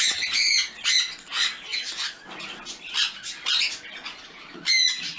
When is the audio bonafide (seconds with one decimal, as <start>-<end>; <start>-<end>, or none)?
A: 1.7-4.8